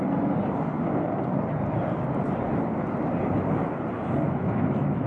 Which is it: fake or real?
real